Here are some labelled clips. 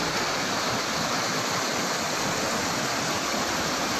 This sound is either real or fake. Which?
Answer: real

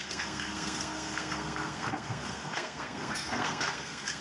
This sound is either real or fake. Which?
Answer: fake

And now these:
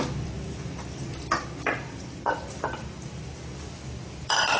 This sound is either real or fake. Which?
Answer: fake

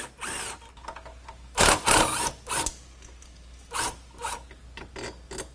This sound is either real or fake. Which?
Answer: real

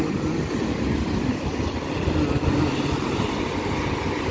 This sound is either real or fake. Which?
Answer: real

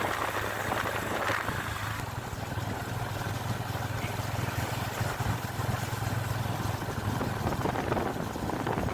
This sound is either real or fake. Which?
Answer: real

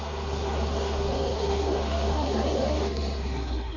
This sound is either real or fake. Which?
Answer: fake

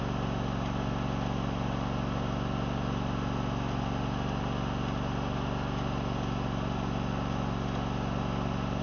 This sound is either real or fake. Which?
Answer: real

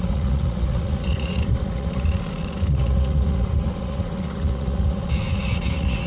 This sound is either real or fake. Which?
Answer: fake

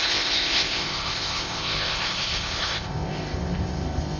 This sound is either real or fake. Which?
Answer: fake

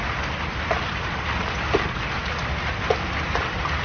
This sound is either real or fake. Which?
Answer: real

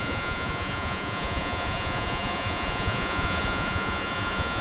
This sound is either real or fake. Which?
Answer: fake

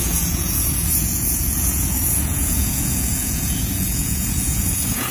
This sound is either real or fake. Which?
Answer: fake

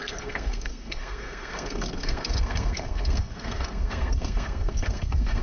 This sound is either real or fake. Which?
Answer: fake